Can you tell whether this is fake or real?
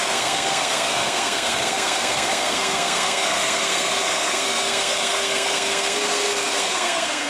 fake